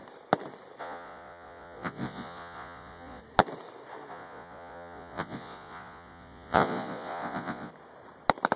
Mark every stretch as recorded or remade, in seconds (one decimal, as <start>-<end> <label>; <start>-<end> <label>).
0.0-0.8 recorded; 0.8-3.2 remade; 3.2-4.1 recorded; 4.1-7.7 remade; 7.7-8.6 recorded

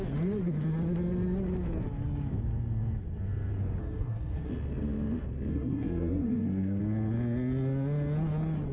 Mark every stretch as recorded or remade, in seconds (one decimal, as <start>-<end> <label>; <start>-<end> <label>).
0.0-3.8 recorded; 3.8-4.5 remade; 4.5-5.5 recorded; 5.5-6.8 remade; 6.8-8.7 recorded

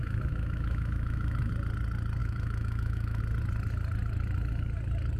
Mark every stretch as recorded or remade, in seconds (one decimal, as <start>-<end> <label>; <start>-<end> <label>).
0.0-1.5 remade; 1.5-2.2 recorded; 2.2-3.2 remade; 3.2-5.2 recorded

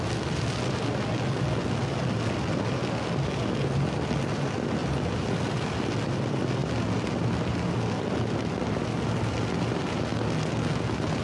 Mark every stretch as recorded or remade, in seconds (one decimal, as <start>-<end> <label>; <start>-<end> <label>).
0.0-4.8 recorded; 4.8-5.7 remade; 5.7-11.2 recorded

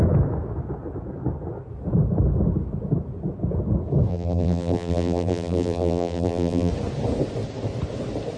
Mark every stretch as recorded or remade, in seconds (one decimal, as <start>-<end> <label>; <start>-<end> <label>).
0.0-4.1 recorded; 4.1-6.7 remade; 6.7-8.4 recorded

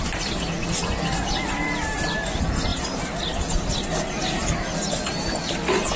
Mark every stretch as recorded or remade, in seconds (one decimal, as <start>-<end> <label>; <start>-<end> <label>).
0.0-6.0 recorded

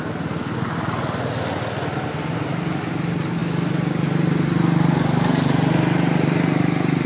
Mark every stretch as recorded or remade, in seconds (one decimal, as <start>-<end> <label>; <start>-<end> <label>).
0.0-7.1 recorded

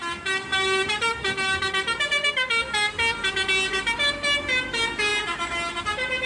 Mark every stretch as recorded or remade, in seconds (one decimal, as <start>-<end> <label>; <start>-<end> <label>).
0.0-6.3 recorded